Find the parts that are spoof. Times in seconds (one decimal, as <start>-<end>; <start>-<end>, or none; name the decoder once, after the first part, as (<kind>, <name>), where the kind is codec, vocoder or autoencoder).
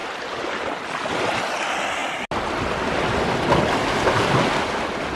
none